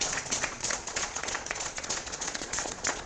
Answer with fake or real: fake